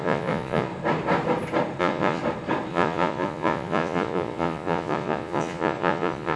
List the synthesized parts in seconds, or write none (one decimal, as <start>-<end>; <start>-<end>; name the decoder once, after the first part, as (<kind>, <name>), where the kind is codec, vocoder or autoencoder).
0.0-0.7 (vocoder, Vocos); 1.8-2.2; 2.7-6.4